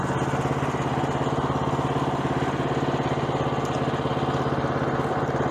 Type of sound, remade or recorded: recorded